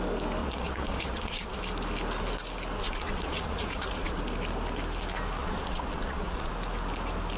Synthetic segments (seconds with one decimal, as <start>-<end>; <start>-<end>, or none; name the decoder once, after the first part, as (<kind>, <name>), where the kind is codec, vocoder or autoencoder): 0.4-1.6 (vocoder, Vocos); 2.8-4.2; 5.4-6.5